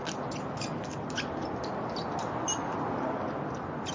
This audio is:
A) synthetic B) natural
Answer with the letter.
B